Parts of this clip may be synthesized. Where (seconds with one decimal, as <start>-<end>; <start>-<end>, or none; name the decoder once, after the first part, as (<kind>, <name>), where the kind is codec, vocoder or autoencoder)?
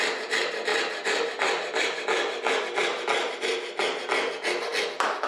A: none